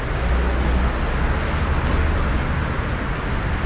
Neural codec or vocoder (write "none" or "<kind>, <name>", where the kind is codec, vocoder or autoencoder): none